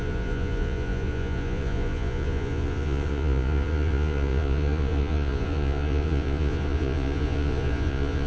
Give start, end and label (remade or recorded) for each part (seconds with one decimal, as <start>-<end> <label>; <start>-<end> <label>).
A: 0.0-8.3 remade